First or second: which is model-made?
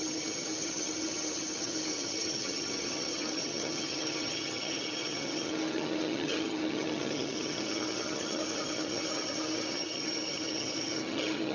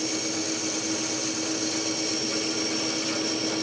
first